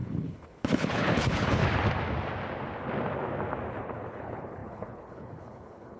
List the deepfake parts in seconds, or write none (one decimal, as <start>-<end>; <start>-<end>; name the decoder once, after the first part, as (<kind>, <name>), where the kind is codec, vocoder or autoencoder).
0.0-1.6 (codec, HILCodec); 3.7-6.0